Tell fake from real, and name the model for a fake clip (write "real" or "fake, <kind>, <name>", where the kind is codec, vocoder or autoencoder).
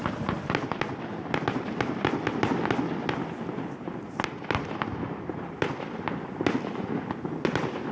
real